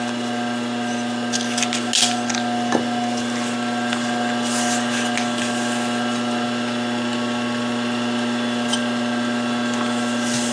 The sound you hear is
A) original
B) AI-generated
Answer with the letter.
A